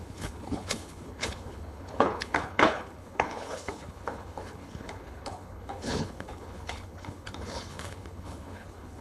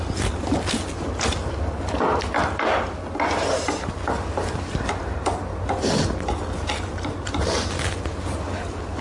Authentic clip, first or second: second